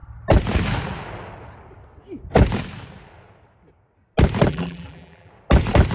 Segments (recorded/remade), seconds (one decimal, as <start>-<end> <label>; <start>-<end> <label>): 0.0-4.5 recorded; 4.5-5.3 remade; 5.3-5.9 recorded